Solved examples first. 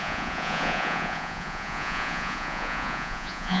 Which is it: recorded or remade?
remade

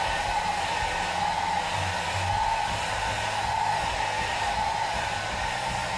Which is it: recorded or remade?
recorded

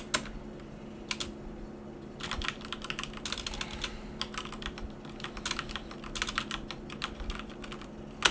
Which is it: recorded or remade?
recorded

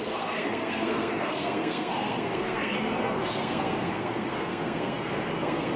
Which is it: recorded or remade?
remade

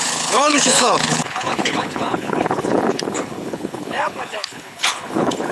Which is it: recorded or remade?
remade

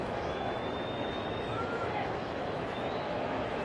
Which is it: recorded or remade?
remade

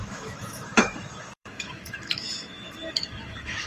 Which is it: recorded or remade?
remade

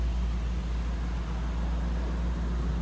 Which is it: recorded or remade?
recorded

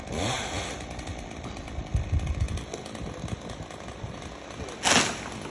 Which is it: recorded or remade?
recorded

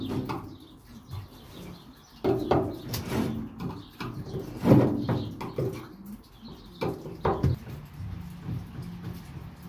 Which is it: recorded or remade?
recorded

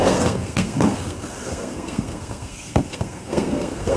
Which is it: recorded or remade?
remade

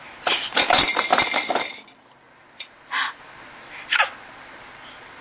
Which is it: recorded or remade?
recorded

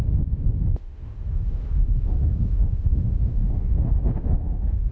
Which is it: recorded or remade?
remade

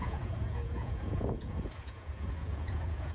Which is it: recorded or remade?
remade